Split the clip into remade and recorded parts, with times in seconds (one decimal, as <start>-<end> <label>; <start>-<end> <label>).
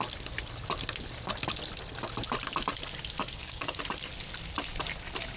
0.0-3.2 recorded; 3.2-3.8 remade; 3.8-5.4 recorded